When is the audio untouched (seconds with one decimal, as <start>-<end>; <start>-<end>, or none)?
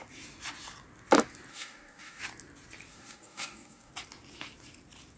0.0-1.5; 2.2-2.9; 3.9-5.2